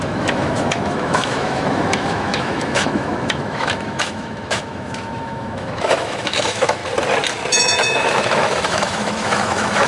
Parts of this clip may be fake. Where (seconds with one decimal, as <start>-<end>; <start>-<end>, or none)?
0.0-6.8; 7.5-9.9